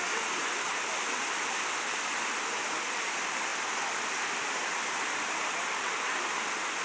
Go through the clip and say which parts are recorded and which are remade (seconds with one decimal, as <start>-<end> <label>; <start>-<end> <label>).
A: 0.0-3.5 remade; 3.5-4.3 recorded; 4.3-6.8 remade